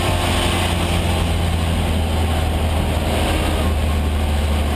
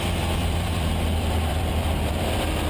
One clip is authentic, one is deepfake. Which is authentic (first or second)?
first